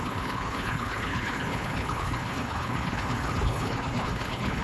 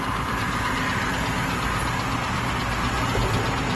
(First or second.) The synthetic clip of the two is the first